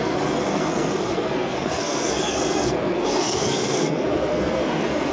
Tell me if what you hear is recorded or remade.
remade